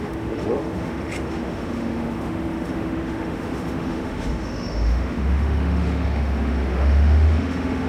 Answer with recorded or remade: remade